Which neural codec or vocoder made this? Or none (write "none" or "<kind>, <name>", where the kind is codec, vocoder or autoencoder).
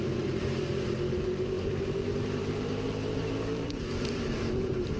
vocoder, BigVGAN v2